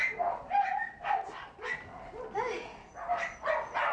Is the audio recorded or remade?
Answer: recorded